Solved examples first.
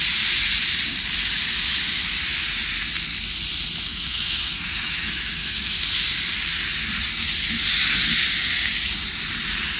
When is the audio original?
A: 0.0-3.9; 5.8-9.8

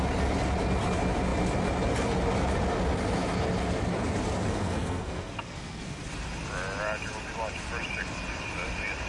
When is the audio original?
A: 0.0-4.5; 6.0-9.1